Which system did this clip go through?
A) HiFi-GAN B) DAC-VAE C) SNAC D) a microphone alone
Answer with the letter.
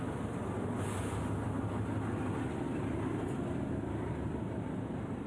D